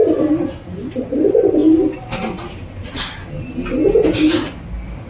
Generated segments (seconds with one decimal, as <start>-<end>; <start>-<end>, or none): none